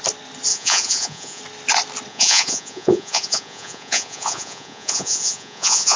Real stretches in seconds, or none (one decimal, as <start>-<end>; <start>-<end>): 0.0-0.5; 1.4-2.1